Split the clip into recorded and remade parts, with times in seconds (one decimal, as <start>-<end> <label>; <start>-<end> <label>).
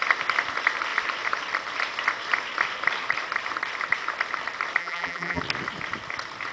0.0-4.8 recorded; 4.8-5.4 remade; 5.4-6.5 recorded